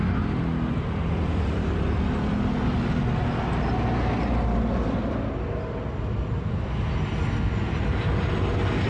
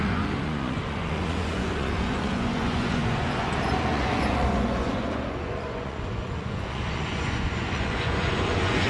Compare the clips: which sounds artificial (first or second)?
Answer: second